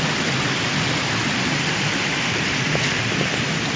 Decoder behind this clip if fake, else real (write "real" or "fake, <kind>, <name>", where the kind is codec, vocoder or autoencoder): real